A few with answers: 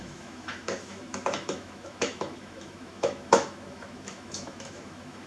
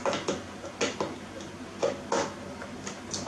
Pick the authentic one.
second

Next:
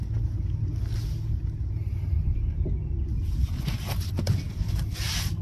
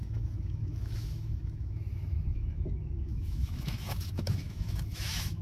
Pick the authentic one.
first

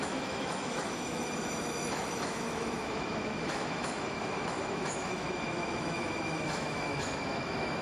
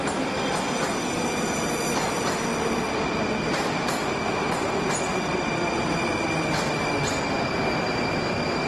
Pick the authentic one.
second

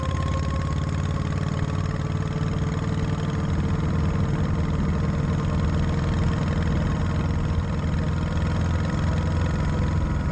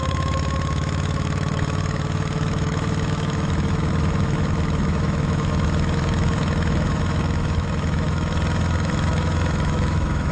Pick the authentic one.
first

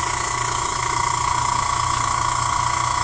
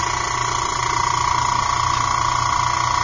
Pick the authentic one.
second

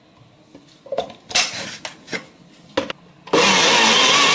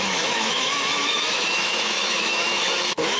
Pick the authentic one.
first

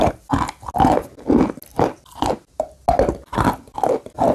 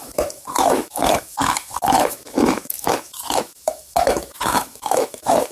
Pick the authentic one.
first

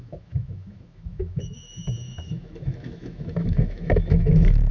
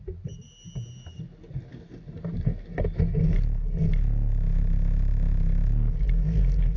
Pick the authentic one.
second